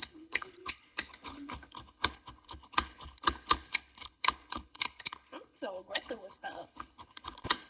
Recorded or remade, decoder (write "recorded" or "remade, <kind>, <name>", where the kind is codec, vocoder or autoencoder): remade, codec, HILCodec